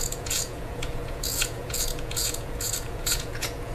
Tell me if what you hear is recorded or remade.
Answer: remade